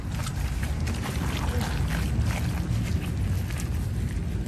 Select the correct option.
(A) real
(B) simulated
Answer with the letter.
A